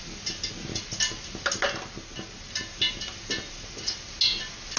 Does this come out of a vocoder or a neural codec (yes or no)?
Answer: no